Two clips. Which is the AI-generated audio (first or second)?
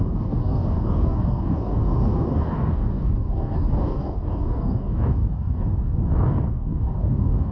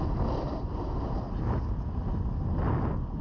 first